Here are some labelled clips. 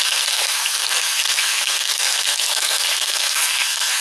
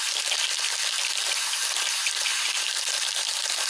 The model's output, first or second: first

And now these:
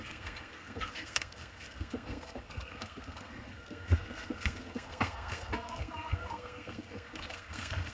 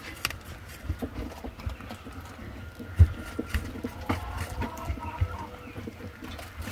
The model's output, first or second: first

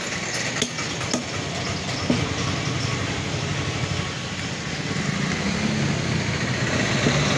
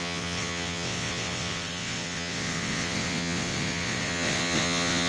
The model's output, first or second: second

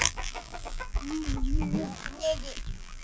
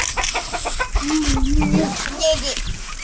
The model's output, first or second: first